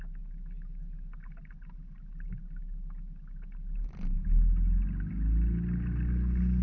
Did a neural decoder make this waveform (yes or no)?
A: no